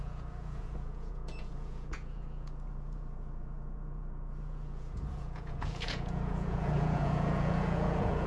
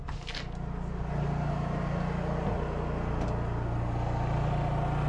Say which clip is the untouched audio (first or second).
second